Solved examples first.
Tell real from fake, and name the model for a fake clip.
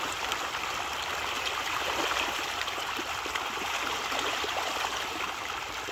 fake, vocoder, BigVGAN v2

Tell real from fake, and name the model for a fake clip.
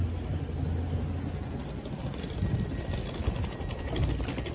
real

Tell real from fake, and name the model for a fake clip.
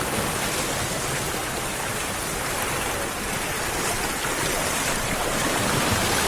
real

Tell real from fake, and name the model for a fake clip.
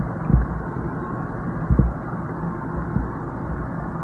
real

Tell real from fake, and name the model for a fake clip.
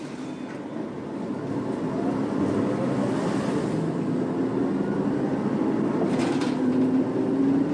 real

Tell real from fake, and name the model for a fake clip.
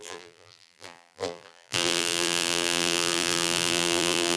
fake, vocoder, BigVGAN v2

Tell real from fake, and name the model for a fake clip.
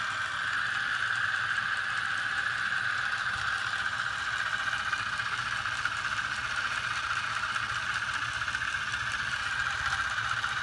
real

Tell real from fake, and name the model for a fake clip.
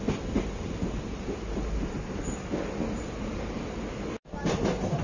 real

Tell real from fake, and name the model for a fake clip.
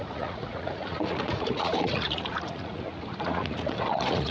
fake, vocoder, Vocos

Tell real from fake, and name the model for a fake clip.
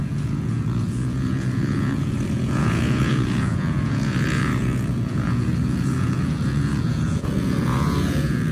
fake, vocoder, Vocos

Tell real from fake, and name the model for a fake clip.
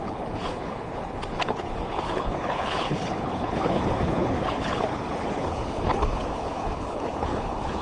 fake, codec, HILCodec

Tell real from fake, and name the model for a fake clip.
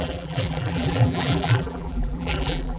fake, vocoder, BigVGAN v2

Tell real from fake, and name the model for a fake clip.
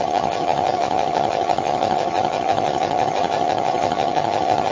fake, vocoder, HiFi-GAN